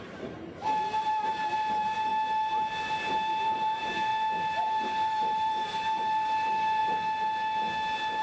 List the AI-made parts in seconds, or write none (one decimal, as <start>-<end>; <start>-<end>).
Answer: 0.0-2.1; 3.4-4.1; 4.6-6.8